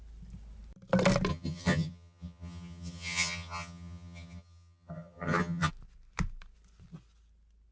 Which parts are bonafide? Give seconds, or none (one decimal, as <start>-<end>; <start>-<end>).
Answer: 0.0-1.3; 5.7-7.7